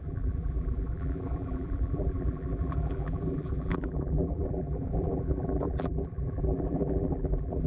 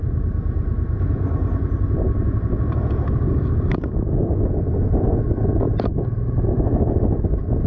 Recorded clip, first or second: second